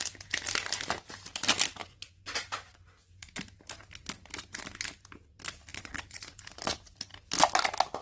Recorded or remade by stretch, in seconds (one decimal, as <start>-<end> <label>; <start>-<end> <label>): 0.0-1.8 recorded; 1.8-3.2 remade; 3.2-5.7 recorded; 5.7-6.4 remade; 6.4-8.0 recorded